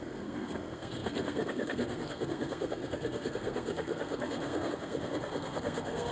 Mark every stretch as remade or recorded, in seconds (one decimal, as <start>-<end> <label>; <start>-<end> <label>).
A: 0.0-6.1 remade